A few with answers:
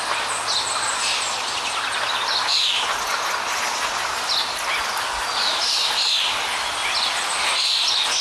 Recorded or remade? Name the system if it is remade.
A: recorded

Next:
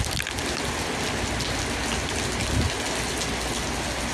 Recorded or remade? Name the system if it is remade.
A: recorded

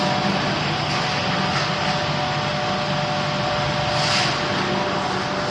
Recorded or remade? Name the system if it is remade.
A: recorded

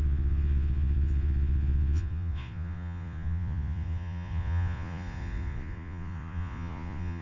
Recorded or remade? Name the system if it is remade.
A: remade, vocoder, Vocos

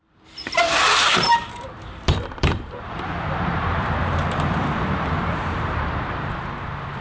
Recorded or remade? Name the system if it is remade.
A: remade, vocoder, BigVGAN v2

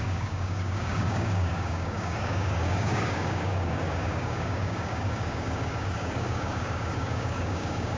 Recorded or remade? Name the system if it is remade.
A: remade, codec, DAC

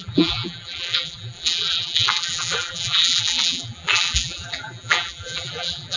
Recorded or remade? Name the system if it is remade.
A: remade, vocoder, BigVGAN v2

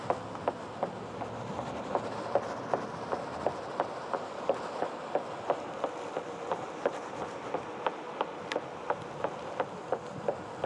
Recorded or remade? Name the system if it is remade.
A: recorded